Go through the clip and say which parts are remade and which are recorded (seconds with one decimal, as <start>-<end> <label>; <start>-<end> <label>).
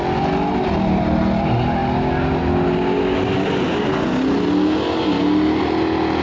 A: 0.0-6.2 recorded